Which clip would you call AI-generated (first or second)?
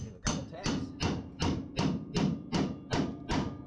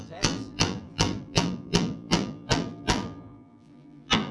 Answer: second